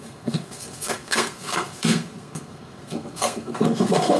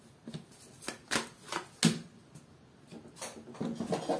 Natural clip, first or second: second